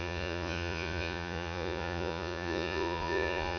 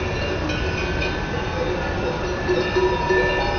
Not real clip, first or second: first